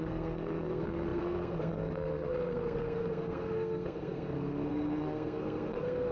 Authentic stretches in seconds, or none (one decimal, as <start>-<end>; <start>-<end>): none